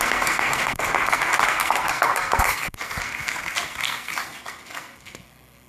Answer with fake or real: fake